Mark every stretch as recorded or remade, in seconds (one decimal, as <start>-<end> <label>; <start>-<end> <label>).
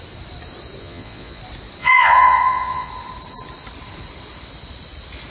0.0-0.8 recorded; 0.8-1.4 remade; 1.4-1.8 recorded; 1.8-2.9 remade; 2.9-5.3 recorded